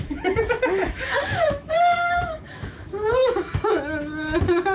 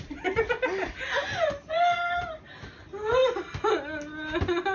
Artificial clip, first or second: first